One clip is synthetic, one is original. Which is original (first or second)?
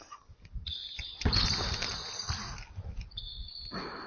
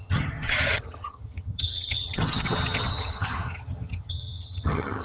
first